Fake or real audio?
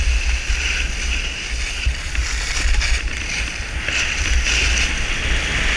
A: real